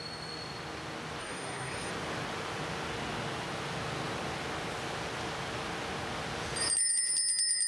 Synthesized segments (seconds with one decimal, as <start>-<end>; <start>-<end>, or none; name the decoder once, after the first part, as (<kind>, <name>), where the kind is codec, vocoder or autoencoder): 1.2-1.9 (codec, SNAC)